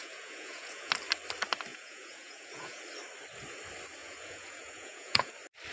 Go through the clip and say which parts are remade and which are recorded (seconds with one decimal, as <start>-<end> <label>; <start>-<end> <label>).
0.0-0.9 remade; 0.9-1.7 recorded; 1.7-2.8 remade; 2.8-4.0 recorded; 4.0-5.3 remade; 5.3-5.7 recorded